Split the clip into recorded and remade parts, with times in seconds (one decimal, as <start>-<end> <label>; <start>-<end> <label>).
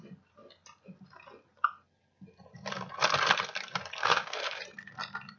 0.0-4.0 recorded; 4.0-4.6 remade; 4.6-5.4 recorded